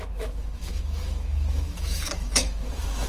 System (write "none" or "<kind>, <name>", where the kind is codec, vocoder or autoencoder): autoencoder, DAC-VAE